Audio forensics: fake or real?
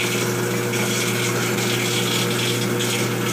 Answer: real